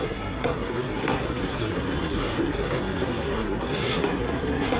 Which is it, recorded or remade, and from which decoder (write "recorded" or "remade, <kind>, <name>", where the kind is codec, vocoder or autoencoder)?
remade, codec, SNAC